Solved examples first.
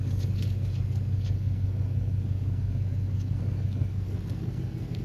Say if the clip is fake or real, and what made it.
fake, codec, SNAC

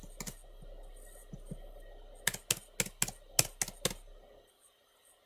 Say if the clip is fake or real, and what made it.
real